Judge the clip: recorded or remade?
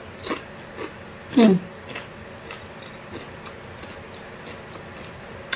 recorded